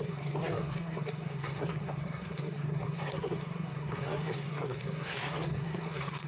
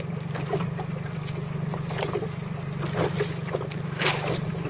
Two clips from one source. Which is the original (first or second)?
second